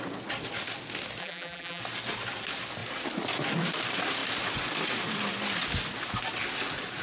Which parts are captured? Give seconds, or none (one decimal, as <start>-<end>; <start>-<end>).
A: 0.0-1.2; 1.8-7.0